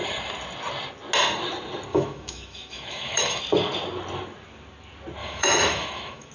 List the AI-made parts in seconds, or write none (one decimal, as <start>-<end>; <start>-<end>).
1.9-3.4; 5.2-6.3